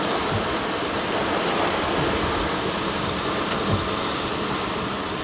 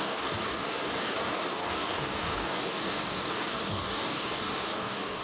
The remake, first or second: second